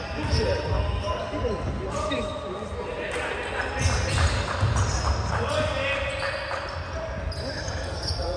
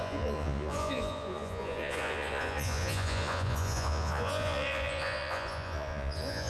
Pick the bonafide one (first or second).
first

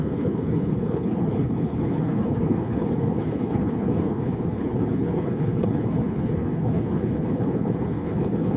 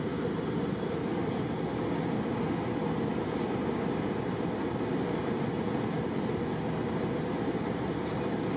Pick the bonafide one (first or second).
second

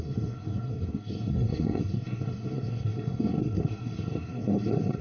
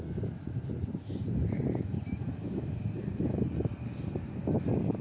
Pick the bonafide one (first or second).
second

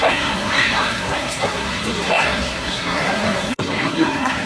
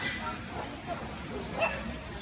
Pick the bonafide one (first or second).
second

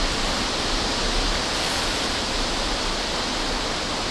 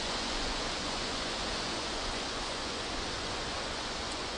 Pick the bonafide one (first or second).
first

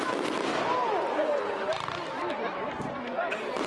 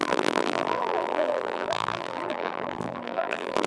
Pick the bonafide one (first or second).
first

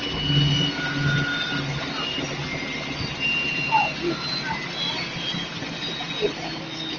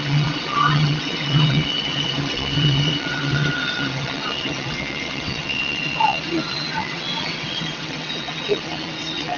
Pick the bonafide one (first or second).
first